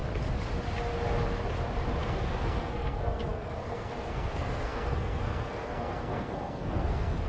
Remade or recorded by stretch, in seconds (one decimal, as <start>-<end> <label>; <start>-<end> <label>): 0.0-2.0 recorded; 2.0-7.3 remade